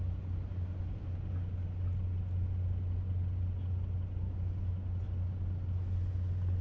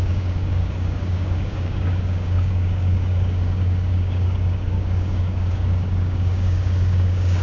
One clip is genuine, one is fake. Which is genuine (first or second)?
first